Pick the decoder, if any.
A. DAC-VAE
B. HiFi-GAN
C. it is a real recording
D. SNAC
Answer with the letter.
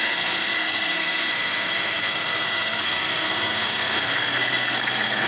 D